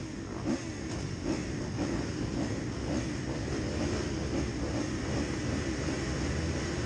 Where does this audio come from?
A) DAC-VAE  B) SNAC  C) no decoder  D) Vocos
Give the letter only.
C